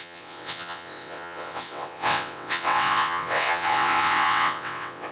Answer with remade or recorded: remade